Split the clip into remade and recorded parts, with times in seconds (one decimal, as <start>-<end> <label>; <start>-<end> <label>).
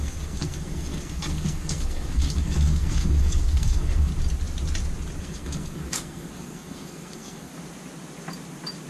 0.0-4.1 remade; 4.1-5.2 recorded; 5.2-7.5 remade; 7.5-8.9 recorded